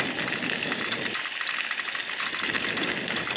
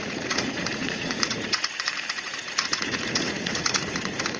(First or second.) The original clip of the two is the first